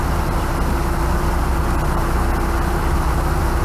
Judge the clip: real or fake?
real